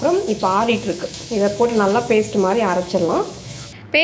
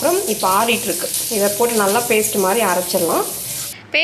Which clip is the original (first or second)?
second